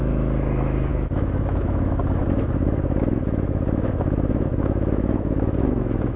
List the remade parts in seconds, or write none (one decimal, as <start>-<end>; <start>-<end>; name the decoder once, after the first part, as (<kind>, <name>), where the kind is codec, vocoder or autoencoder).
0.0-6.2 (autoencoder, DAC-VAE)